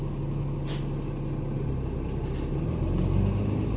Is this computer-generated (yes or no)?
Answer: no